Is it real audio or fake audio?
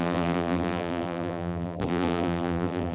fake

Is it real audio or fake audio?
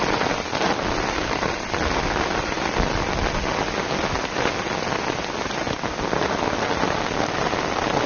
real